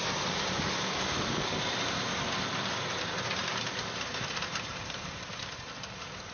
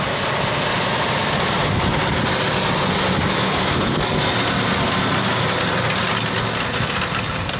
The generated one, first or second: first